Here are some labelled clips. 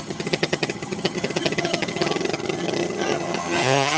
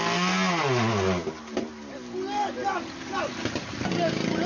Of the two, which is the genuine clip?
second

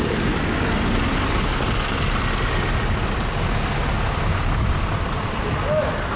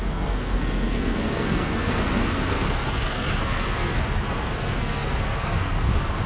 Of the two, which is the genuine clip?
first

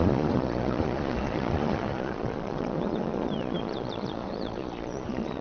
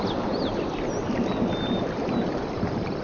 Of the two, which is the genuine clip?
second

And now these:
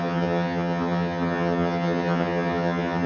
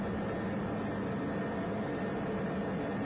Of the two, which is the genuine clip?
second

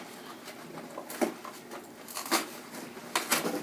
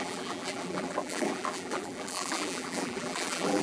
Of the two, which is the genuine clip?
first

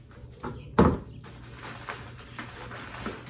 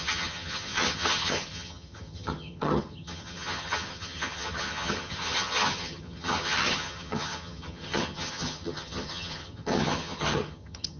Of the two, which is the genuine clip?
first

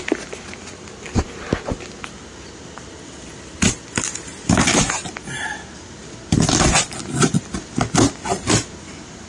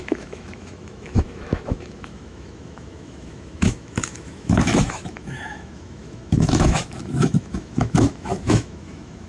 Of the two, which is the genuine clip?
first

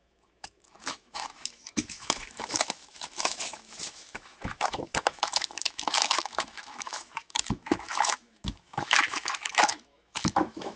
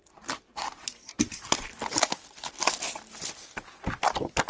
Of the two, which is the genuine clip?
second